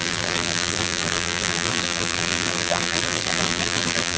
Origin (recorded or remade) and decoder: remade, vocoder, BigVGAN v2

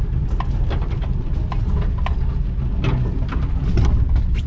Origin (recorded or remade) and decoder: recorded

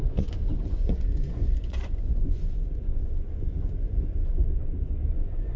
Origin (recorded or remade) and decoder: remade, vocoder, Vocos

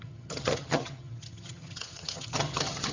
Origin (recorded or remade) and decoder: remade, vocoder, HiFi-GAN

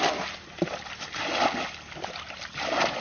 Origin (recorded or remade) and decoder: recorded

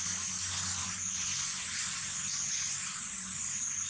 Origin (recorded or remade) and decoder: recorded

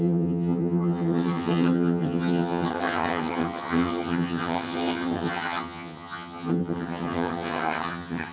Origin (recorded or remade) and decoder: remade, vocoder, HiFi-GAN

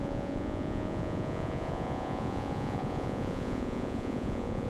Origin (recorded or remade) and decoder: remade, vocoder, Vocos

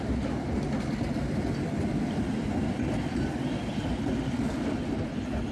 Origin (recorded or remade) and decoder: recorded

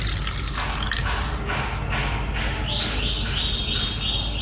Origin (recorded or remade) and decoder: recorded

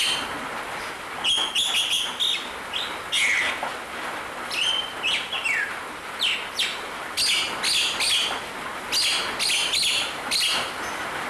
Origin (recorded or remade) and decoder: recorded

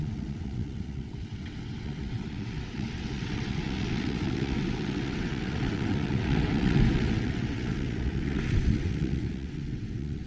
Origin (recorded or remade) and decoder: remade, vocoder, WaveNeXt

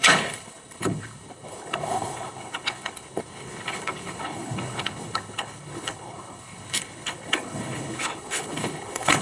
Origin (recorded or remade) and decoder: remade, codec, HILCodec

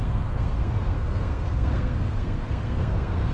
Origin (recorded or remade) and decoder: remade, codec, SNAC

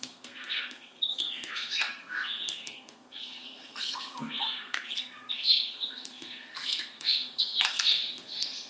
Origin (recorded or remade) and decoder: remade, codec, SNAC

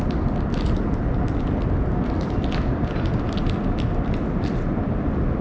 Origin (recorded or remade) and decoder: recorded